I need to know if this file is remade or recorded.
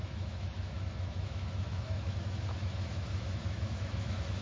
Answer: remade